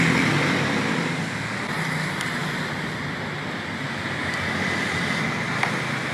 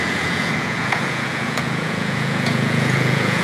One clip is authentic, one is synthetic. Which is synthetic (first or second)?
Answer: second